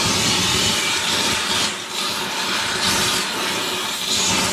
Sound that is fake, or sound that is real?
real